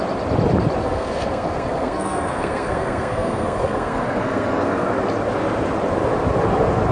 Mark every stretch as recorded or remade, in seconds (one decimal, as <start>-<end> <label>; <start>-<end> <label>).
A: 0.0-0.8 recorded; 0.8-4.9 remade; 4.9-6.9 recorded